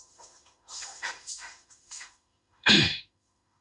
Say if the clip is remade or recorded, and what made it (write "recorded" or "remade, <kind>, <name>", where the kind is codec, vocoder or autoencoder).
remade, autoencoder, DAC-VAE